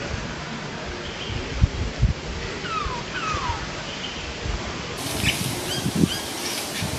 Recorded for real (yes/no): yes